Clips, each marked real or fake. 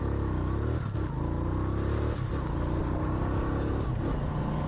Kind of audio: real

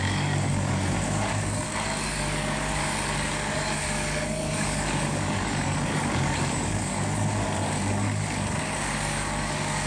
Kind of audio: fake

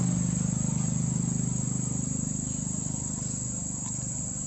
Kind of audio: real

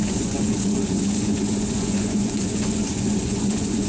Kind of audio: fake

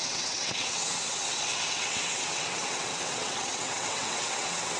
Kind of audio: fake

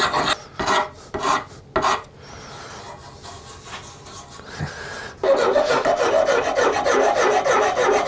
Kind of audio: real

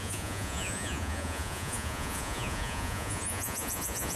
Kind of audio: fake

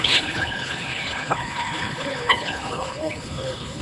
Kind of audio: fake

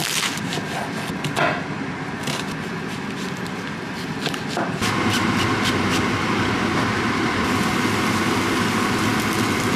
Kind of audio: real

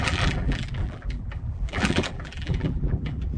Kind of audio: fake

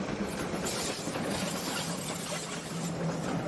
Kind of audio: real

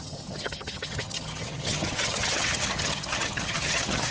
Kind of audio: fake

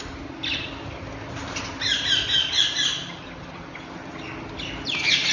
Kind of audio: real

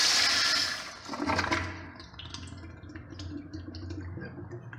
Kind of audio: real